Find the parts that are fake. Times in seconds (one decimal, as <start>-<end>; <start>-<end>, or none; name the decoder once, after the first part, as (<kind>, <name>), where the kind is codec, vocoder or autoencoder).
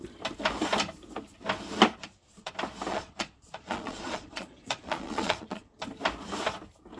2.0-2.5 (vocoder, Vocos); 2.9-5.8